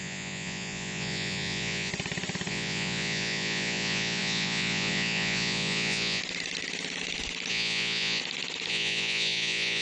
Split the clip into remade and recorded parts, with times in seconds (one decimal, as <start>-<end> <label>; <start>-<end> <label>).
0.0-1.9 remade; 1.9-2.5 recorded; 2.5-6.2 remade; 6.2-7.5 recorded; 7.5-8.2 remade; 8.2-8.7 recorded; 8.7-9.8 remade